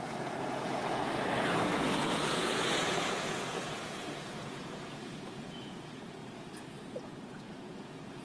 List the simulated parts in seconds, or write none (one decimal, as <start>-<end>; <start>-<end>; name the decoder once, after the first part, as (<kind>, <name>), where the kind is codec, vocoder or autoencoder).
0.0-6.2 (vocoder, Vocos); 6.9-8.2